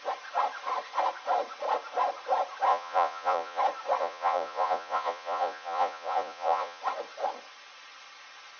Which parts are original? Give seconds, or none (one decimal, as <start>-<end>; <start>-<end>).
0.0-2.7; 3.6-4.0; 6.8-8.6